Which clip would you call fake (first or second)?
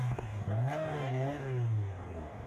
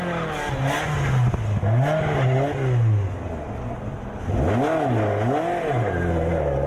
first